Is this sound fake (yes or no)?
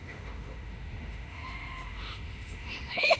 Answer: yes